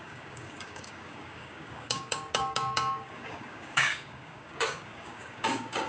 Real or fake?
fake